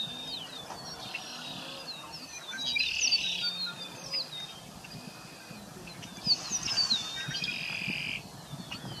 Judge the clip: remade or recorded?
recorded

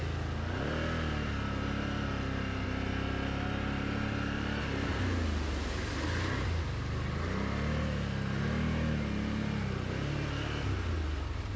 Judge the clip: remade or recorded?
recorded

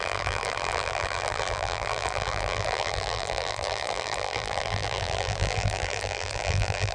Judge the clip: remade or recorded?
remade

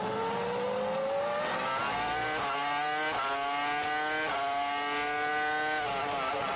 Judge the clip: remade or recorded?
recorded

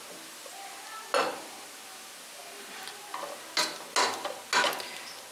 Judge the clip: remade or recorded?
recorded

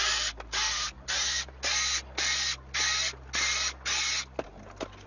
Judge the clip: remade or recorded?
recorded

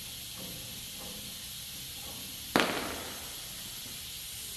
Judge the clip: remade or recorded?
recorded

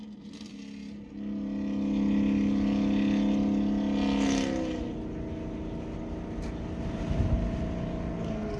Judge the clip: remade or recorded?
recorded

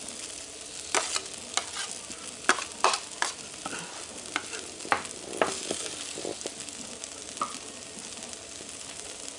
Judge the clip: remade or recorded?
recorded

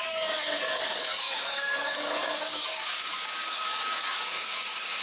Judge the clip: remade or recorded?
remade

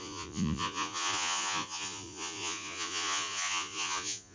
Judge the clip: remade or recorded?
remade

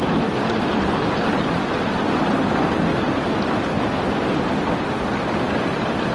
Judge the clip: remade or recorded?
recorded